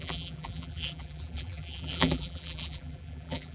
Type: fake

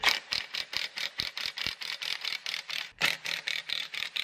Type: fake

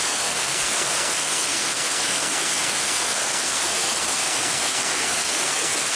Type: fake